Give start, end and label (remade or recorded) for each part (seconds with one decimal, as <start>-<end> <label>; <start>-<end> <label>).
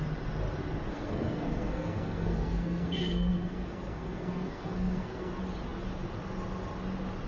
0.0-0.9 recorded; 0.9-5.3 remade; 5.3-7.3 recorded